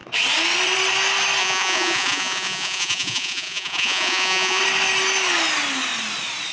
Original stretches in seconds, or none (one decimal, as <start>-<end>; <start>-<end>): 0.0-1.4; 4.6-6.5